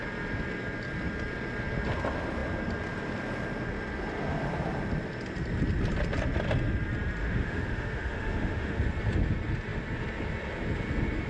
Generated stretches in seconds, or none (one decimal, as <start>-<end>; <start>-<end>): 7.2-8.8